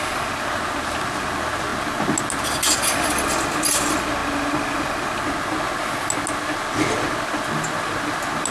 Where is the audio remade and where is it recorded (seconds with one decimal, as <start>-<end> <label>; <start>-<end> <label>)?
0.0-8.5 recorded